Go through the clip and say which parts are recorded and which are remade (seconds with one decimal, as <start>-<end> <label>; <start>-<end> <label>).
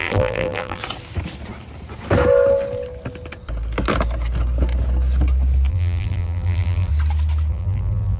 0.0-0.8 remade; 0.8-5.7 recorded; 5.7-6.9 remade; 6.9-7.5 recorded; 7.5-8.2 remade